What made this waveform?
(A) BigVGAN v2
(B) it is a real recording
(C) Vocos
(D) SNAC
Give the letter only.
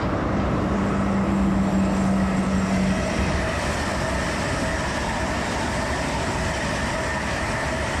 B